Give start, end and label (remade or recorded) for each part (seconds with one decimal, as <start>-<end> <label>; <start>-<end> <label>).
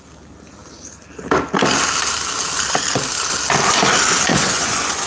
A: 0.0-4.3 recorded; 4.3-5.1 remade